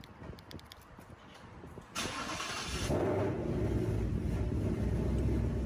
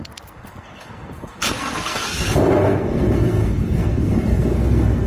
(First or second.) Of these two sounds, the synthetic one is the second